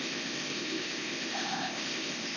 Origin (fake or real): fake